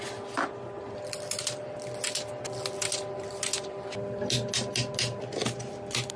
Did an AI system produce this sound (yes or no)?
no